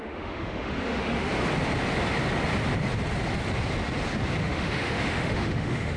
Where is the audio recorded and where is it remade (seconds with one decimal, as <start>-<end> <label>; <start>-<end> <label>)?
0.0-1.3 remade; 1.3-4.4 recorded; 4.4-6.0 remade